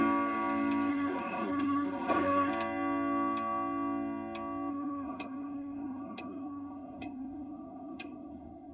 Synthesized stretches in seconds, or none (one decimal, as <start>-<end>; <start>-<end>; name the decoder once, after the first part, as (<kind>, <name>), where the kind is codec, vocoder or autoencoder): 0.9-2.5 (codec, SNAC); 4.7-8.7